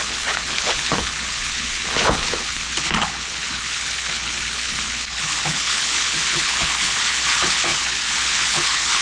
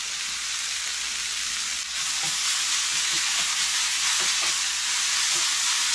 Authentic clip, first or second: second